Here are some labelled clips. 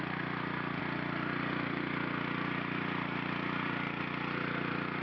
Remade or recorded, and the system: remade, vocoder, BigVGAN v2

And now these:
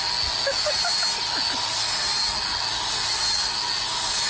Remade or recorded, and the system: recorded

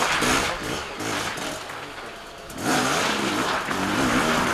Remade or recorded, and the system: recorded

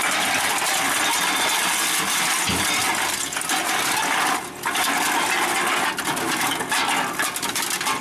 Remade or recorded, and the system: recorded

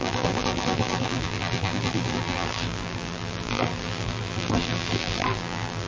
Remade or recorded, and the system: remade, vocoder, BigVGAN v2